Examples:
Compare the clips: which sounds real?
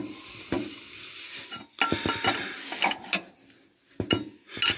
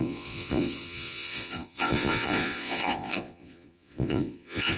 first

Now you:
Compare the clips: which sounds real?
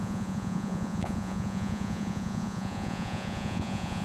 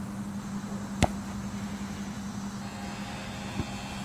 second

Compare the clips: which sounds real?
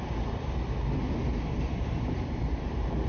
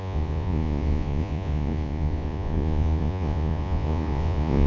first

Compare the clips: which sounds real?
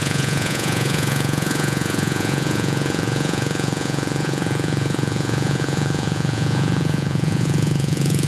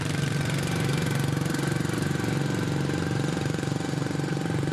second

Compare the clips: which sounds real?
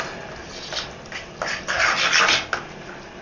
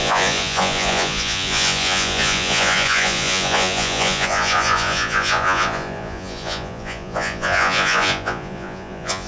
first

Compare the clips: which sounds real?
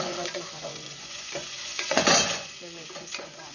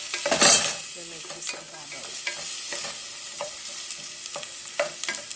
second